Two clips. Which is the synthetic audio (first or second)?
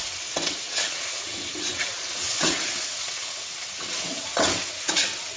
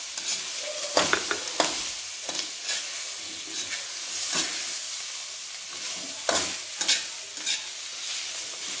first